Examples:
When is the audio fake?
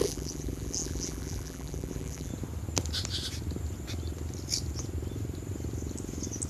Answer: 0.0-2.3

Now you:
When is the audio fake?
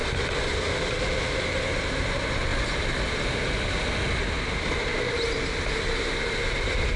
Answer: 1.7-2.5; 6.0-7.0